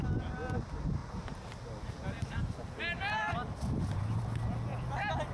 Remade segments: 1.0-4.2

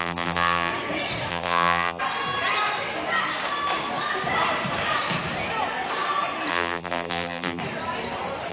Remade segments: 0.0-0.7; 1.3-2.0; 6.5-7.6

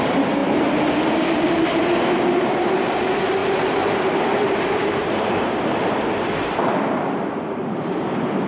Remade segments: 0.0-0.4; 1.1-8.5

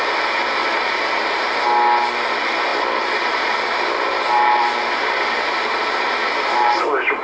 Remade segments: 0.6-1.5; 2.7-7.2

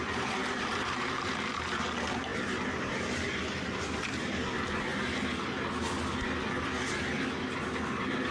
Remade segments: 0.4-1.2; 2.3-4.2

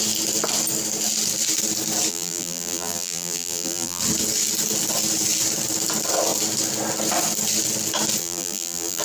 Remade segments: 2.1-4.0; 8.2-9.0

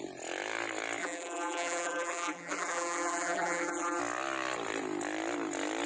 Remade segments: 1.0-4.0